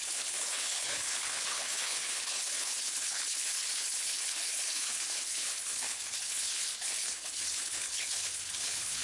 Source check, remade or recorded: remade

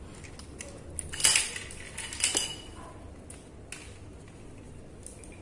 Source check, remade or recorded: recorded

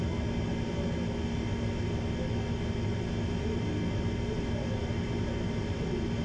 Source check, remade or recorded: recorded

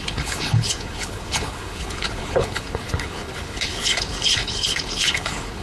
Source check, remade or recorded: remade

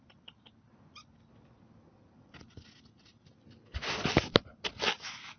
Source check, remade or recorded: recorded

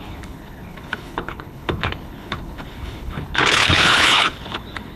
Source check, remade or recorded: remade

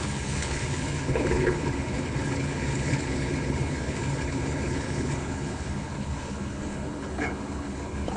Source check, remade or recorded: remade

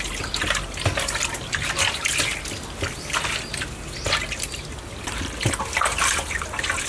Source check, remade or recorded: recorded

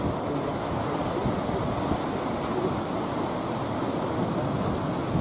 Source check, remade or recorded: recorded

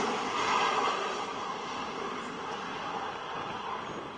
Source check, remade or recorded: recorded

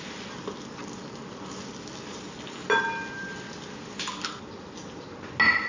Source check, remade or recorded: recorded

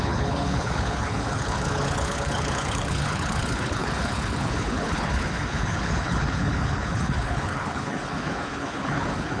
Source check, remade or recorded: remade